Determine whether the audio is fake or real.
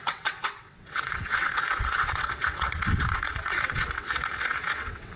fake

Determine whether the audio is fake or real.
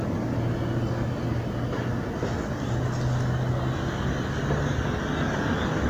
real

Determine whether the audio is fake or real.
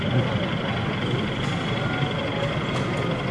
real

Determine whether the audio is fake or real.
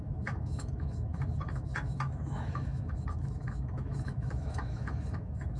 fake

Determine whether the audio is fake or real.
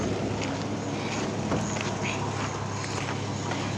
real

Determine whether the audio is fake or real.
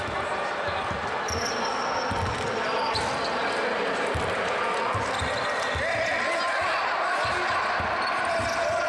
real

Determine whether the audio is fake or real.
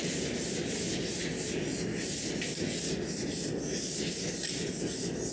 real